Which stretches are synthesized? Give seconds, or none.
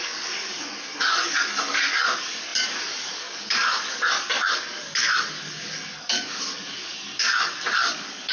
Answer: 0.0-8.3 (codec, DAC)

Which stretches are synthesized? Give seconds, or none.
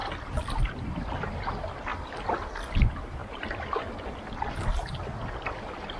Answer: none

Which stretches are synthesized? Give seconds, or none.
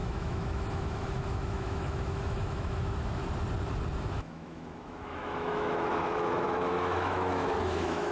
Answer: 0.0-3.2 (autoencoder, DAC-VAE); 4.1-8.1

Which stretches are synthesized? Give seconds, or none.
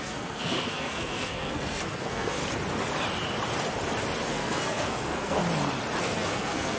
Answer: 0.0-2.4 (codec, SNAC); 4.3-5.4; 6.0-6.8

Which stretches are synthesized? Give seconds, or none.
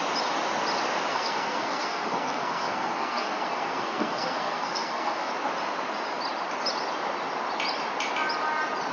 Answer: 1.1-5.3 (codec, SNAC)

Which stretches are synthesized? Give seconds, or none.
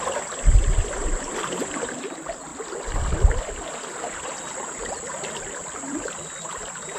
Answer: none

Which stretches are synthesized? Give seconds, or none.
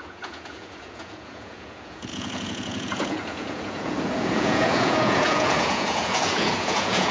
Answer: 0.0-7.1 (vocoder, Vocos)